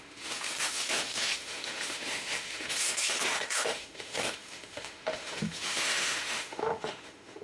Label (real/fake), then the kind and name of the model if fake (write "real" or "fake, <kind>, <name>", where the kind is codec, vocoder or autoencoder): fake, autoencoder, DAC-VAE